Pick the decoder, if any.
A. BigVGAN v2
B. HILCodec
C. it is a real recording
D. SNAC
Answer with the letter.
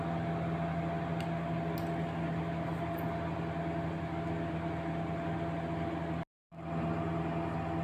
C